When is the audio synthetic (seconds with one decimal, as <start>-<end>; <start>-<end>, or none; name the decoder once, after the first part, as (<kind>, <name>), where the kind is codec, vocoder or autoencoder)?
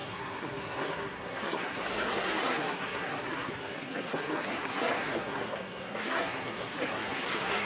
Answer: 0.0-7.7 (codec, SNAC)